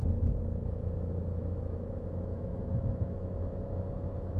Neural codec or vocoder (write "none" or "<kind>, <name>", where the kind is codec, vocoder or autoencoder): autoencoder, DAC-VAE